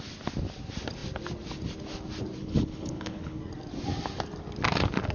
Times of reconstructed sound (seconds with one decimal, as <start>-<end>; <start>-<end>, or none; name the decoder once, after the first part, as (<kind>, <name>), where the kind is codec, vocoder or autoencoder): 2.4-3.4 (codec, HILCodec)